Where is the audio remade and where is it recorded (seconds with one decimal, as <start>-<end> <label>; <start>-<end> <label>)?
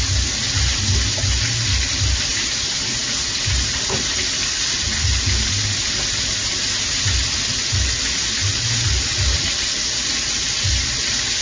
0.0-11.4 recorded